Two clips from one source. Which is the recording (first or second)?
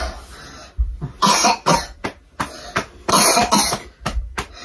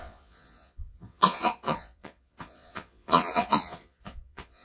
first